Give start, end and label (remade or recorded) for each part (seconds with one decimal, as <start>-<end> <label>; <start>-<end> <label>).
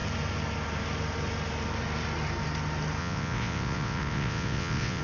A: 0.0-3.0 recorded; 3.0-5.0 remade